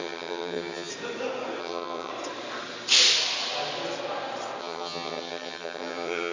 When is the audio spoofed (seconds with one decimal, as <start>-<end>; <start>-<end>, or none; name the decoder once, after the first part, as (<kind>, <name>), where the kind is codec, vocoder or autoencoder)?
0.0-0.9 (vocoder, HiFi-GAN); 1.6-2.1; 4.6-6.3

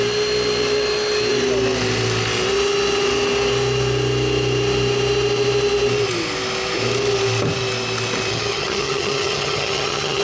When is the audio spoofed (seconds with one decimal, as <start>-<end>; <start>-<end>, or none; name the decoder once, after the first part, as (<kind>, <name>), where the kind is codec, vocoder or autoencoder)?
8.3-10.2 (vocoder, HiFi-GAN)